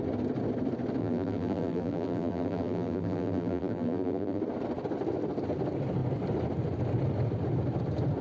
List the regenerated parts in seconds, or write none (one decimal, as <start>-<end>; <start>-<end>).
1.0-4.4